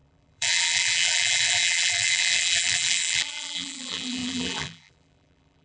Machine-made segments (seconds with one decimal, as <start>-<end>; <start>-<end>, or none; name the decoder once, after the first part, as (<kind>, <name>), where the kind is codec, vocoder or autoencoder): 0.0-5.6 (vocoder, BigVGAN v2)